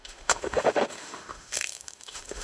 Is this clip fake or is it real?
fake